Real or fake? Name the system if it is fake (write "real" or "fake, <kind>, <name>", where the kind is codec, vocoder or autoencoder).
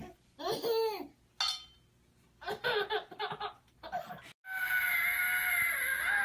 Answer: real